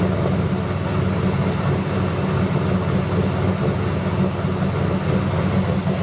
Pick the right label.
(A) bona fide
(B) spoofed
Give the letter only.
A